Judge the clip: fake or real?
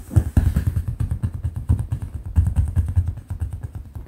real